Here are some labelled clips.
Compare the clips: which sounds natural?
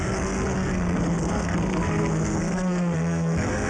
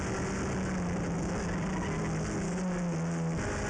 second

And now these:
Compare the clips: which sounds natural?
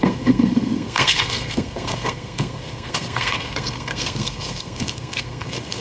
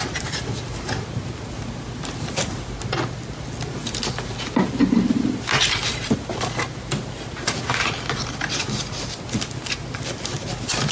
second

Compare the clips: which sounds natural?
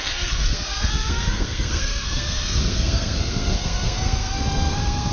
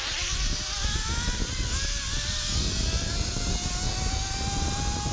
second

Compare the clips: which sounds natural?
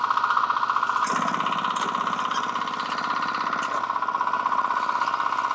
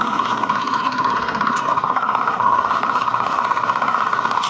first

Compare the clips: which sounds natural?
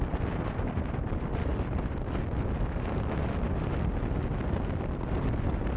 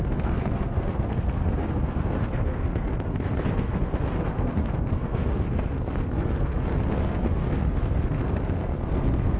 first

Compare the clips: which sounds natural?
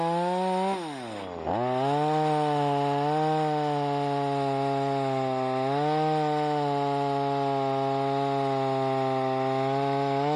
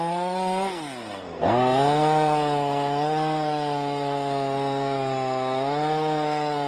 first